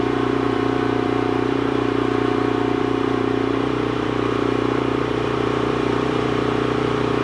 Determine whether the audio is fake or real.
fake